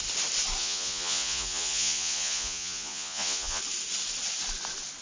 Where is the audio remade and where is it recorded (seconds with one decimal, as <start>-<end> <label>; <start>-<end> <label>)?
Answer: 0.0-0.6 recorded; 0.6-3.6 remade; 3.6-5.0 recorded